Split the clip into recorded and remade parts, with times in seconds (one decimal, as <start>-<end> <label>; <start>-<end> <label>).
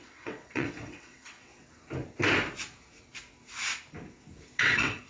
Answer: 0.0-1.5 remade; 1.5-4.6 recorded; 4.6-5.1 remade